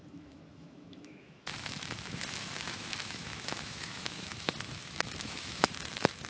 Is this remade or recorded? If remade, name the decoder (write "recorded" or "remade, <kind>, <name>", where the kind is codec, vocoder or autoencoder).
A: remade, autoencoder, DAC-VAE